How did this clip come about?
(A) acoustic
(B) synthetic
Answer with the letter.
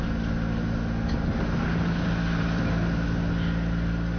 A